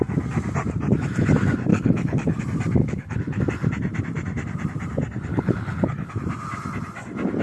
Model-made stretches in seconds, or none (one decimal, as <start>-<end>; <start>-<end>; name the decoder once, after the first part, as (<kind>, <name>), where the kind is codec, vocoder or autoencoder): 1.7-2.4 (codec, HILCodec); 2.8-3.4; 5.3-6.1

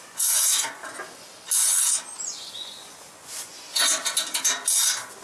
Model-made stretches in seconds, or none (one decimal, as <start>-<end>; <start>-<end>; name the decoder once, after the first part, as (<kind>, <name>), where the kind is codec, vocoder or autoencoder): 0.0-0.8 (vocoder, Vocos); 1.9-3.9